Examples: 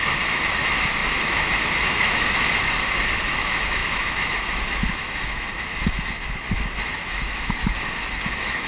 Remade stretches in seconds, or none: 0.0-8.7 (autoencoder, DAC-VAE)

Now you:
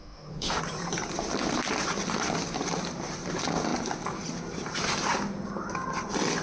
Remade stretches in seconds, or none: 0.0-0.6 (autoencoder, DAC-VAE)

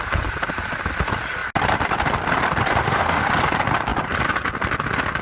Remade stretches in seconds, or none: 2.8-3.3 (autoencoder, DAC-VAE)

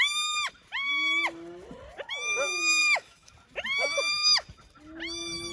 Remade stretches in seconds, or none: 2.8-3.3 (autoencoder, DAC-VAE)

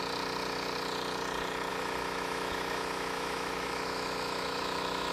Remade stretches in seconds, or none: 1.7-5.1 (autoencoder, DAC-VAE)

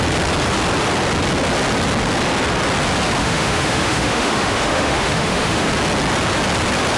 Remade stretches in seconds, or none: 3.2-5.7 (autoencoder, DAC-VAE)

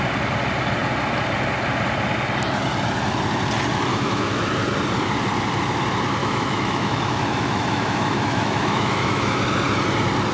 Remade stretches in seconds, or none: 3.9-4.5 (autoencoder, DAC-VAE); 6.2-9.4

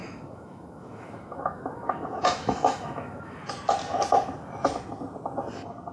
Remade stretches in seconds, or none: 0.0-3.5 (autoencoder, DAC-VAE)